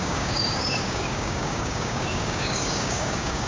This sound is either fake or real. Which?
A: fake